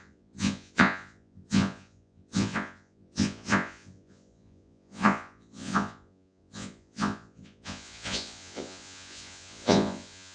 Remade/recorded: remade